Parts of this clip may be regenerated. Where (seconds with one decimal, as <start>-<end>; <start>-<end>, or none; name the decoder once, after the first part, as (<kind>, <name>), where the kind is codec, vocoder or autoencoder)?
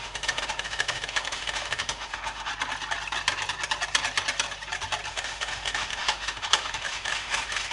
0.0-2.5 (autoencoder, DAC-VAE); 5.1-7.7